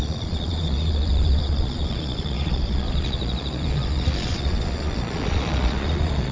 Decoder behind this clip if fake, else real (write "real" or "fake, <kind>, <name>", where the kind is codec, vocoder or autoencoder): fake, vocoder, Vocos